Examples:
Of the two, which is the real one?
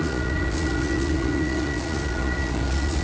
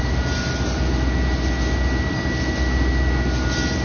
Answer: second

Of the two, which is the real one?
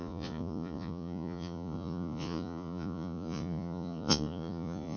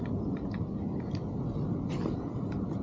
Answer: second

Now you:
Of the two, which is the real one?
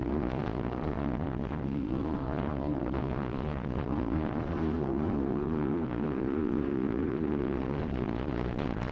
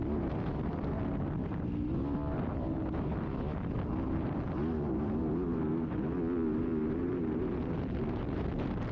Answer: second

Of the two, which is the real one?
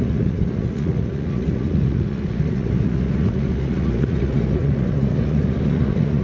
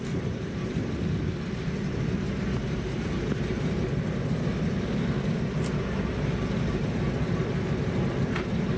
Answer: second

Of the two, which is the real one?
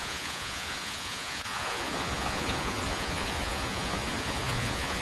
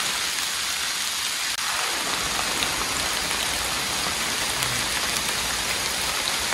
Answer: second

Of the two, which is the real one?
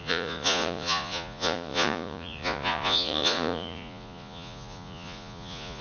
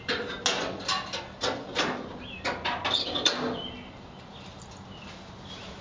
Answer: second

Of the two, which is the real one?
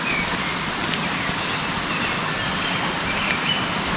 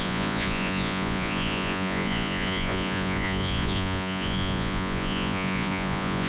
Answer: first